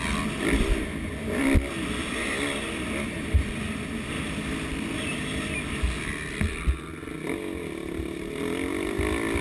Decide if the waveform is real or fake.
real